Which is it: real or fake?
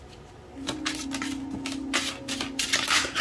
real